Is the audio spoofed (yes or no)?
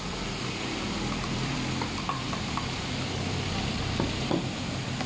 yes